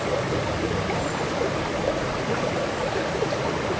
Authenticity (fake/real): real